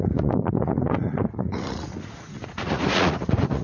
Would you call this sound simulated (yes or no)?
yes